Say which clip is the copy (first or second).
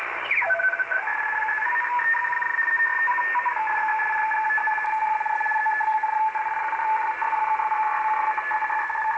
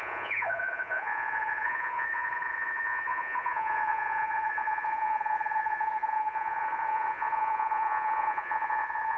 second